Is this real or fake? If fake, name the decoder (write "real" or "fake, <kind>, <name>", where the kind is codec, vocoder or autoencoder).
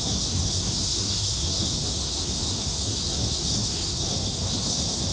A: fake, codec, SNAC